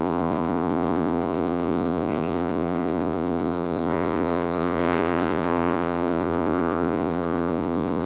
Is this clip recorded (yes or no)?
no